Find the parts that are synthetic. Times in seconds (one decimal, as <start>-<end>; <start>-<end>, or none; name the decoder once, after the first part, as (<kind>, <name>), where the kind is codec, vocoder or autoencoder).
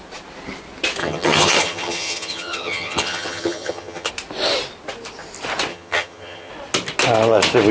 1.0-4.1 (vocoder, HiFi-GAN); 5.7-6.5